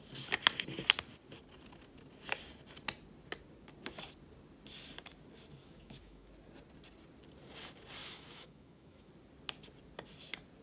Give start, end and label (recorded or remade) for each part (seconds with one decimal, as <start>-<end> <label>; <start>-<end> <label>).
0.0-5.6 recorded; 5.6-6.3 remade; 6.3-8.0 recorded; 8.0-9.1 remade; 9.1-10.6 recorded